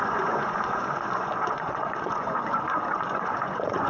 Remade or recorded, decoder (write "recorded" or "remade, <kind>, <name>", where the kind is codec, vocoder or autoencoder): remade, vocoder, Vocos